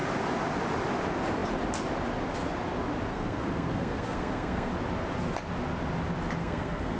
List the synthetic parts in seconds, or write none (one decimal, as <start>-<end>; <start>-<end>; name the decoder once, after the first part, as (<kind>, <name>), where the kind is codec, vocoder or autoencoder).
3.1-4.7 (codec, SNAC); 6.4-7.0

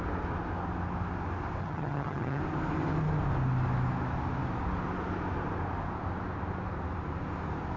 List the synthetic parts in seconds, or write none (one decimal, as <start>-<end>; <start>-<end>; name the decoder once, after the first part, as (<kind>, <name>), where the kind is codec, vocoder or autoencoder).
1.6-2.4 (vocoder, HiFi-GAN)

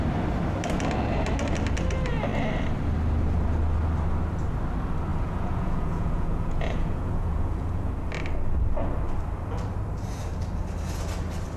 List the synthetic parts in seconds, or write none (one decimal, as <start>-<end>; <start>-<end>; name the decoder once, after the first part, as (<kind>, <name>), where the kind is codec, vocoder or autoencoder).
5.1-7.9 (vocoder, Vocos)

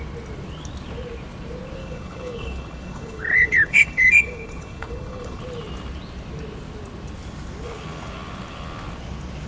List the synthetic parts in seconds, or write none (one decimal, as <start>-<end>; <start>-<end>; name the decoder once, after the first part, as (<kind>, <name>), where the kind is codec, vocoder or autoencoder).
1.8-5.4 (codec, HILCodec)

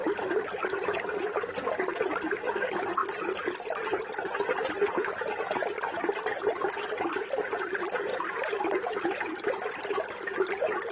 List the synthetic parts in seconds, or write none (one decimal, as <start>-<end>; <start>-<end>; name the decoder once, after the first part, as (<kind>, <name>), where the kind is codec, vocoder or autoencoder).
8.1-10.1 (vocoder, BigVGAN v2)

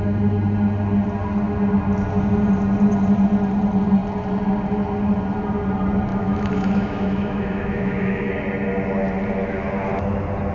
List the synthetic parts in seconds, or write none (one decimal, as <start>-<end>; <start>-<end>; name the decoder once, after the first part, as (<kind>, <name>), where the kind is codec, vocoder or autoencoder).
6.1-8.3 (autoencoder, DAC-VAE)

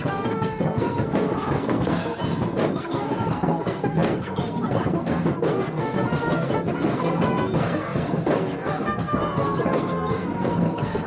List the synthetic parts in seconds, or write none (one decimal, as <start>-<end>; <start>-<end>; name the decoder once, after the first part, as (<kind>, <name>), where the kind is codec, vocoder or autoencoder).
0.0-2.2 (codec, SNAC); 2.7-11.1

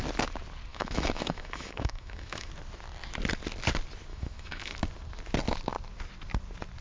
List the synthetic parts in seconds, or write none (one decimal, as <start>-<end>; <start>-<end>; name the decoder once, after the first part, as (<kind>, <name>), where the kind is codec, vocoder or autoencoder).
0.7-2.5 (autoencoder, DAC-VAE); 4.1-4.8